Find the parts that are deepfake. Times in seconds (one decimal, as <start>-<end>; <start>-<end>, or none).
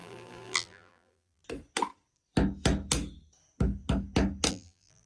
0.0-1.4; 4.5-5.1